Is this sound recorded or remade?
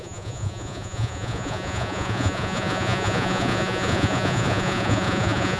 remade